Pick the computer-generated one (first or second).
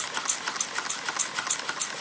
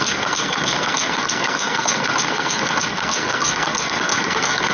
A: second